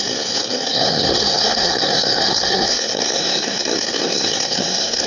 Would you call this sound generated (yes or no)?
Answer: yes